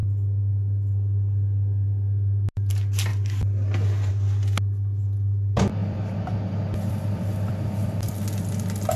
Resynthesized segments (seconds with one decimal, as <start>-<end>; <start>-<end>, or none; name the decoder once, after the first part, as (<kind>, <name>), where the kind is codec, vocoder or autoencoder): 5.8-8.4 (vocoder, BigVGAN v2)